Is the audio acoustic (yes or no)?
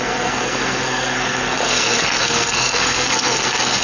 no